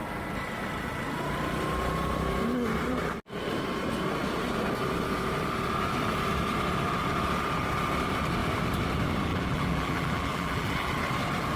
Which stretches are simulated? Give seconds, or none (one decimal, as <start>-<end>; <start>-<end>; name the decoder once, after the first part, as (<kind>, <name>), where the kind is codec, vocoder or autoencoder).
9.3-10.9 (vocoder, BigVGAN v2)